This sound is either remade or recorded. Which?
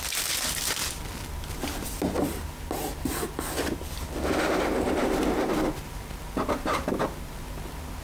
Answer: recorded